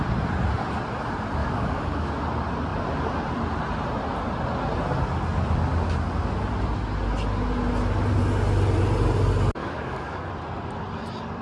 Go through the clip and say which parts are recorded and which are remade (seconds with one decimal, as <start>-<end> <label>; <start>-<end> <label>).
0.0-1.4 recorded; 1.4-2.1 remade; 2.1-9.6 recorded; 9.6-10.3 remade; 10.3-11.4 recorded